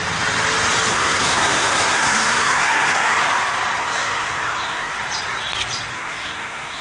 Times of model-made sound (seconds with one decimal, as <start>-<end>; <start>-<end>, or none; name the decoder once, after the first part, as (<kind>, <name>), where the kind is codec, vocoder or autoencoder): 0.9-3.2 (codec, SNAC); 3.8-4.9; 5.9-6.8